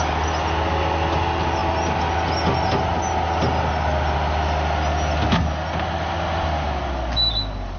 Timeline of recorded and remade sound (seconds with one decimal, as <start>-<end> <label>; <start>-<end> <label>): 0.0-7.8 recorded